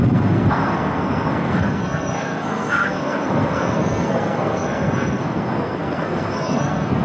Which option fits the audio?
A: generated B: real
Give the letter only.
A